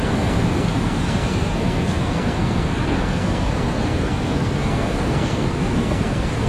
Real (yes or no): no